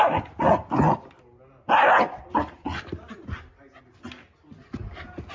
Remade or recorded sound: recorded